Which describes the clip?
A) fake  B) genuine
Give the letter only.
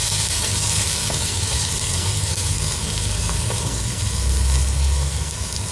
A